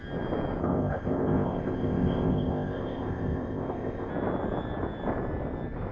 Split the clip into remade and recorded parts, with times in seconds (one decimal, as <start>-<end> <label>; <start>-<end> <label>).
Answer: 0.0-0.6 recorded; 0.6-4.1 remade; 4.1-5.9 recorded